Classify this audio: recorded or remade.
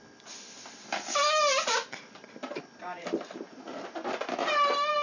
recorded